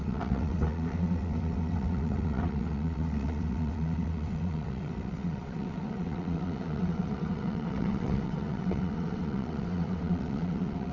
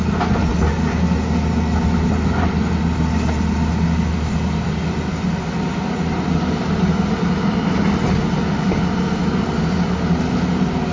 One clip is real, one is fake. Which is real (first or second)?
second